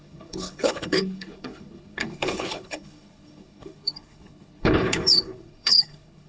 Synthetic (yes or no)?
yes